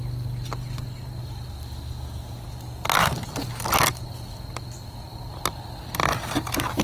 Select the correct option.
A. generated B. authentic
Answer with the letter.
B